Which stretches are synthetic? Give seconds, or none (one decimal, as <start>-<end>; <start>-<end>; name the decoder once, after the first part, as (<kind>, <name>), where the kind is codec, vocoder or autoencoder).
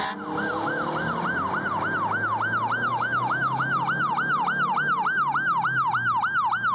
2.9-3.8 (autoencoder, DAC-VAE)